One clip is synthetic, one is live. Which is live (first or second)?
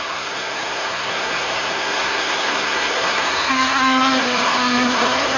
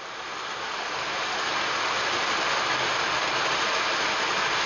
second